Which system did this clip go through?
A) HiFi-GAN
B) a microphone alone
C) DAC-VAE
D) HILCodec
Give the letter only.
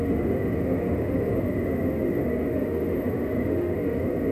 C